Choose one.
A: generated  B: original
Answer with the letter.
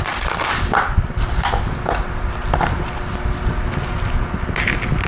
B